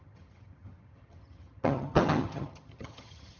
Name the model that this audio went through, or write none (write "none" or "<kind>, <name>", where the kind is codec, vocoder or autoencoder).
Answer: vocoder, HiFi-GAN